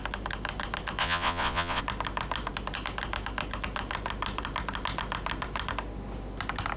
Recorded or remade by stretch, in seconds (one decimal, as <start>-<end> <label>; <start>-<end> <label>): 0.0-1.0 recorded; 1.0-1.8 remade; 1.8-6.8 recorded